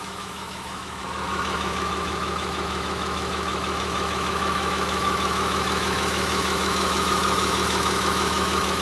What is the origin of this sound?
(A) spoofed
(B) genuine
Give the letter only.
A